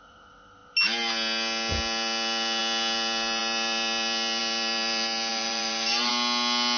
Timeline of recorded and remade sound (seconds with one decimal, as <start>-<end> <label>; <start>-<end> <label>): 0.0-5.3 recorded; 5.3-6.1 remade; 6.1-6.8 recorded